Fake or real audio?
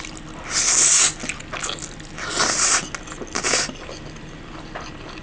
real